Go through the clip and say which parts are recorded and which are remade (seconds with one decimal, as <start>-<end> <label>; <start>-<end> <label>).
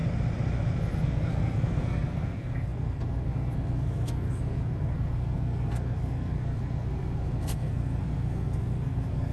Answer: 0.0-0.8 recorded; 0.8-9.3 remade